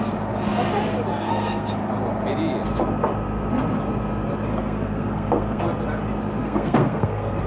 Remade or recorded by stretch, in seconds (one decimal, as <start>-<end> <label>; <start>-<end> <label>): 0.0-1.1 recorded; 1.1-1.7 remade; 1.7-4.5 recorded; 4.5-5.6 remade; 5.6-6.4 recorded; 6.4-7.5 remade

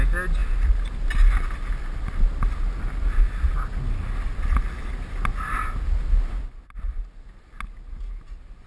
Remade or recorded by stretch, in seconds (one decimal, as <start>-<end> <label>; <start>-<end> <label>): 0.0-8.7 recorded

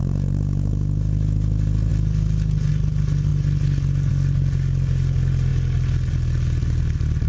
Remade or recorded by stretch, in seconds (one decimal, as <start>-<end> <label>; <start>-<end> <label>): 0.0-7.3 recorded

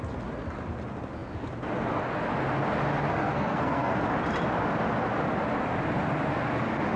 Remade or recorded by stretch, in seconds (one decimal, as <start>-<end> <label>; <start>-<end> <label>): 0.0-3.1 recorded; 3.1-4.0 remade; 4.0-7.0 recorded

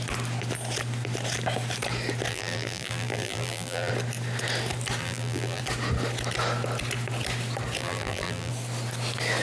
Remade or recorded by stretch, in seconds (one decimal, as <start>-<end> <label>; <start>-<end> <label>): 0.0-2.3 recorded; 2.3-3.9 remade; 3.9-5.0 recorded; 5.0-5.6 remade; 5.6-7.8 recorded; 7.8-8.5 remade; 8.5-9.4 recorded

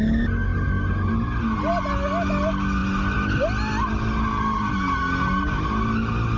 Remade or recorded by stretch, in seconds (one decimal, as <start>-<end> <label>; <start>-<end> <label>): 0.0-6.4 recorded

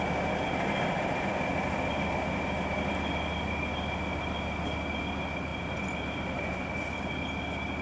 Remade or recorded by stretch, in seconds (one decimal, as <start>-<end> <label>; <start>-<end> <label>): 0.0-5.5 recorded; 5.5-6.7 remade; 6.7-7.8 recorded